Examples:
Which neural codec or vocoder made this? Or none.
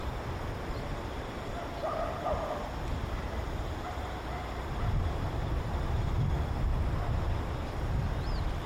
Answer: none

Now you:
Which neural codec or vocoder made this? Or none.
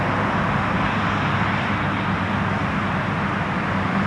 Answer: none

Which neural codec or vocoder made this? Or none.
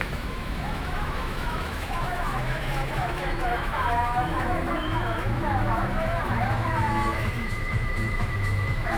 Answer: autoencoder, DAC-VAE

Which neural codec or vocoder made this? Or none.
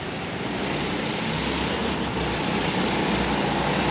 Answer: none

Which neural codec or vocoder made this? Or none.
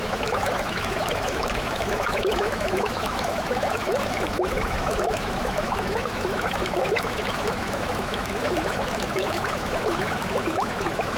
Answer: autoencoder, DAC-VAE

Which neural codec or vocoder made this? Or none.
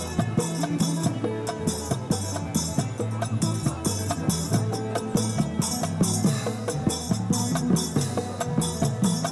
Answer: none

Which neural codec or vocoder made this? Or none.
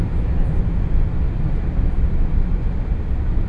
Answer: none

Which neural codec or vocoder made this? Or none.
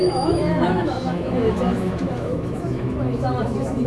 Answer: autoencoder, DAC-VAE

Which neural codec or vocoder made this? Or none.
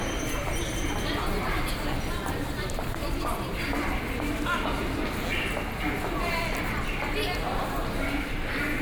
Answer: none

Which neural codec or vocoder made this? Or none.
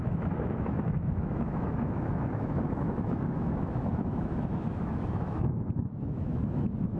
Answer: autoencoder, DAC-VAE